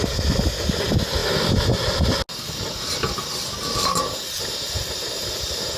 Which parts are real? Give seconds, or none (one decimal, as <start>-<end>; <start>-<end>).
0.0-5.8